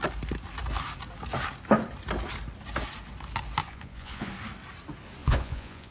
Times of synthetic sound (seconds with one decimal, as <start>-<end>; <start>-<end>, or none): 3.6-4.3; 5.2-5.9